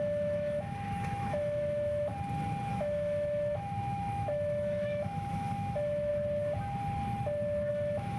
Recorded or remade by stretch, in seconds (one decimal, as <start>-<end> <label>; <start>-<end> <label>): 0.0-2.1 remade; 2.1-2.7 recorded; 2.7-6.1 remade; 6.1-7.7 recorded; 7.7-8.2 remade